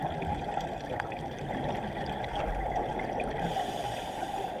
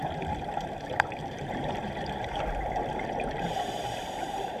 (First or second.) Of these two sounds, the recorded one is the first